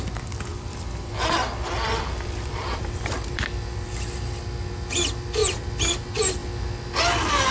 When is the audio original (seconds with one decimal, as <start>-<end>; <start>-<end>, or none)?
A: 0.0-0.5; 3.9-7.5